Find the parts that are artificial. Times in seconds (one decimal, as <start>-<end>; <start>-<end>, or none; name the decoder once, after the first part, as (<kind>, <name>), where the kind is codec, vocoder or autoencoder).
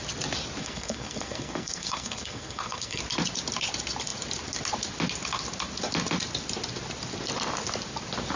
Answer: 0.6-3.0 (codec, SNAC)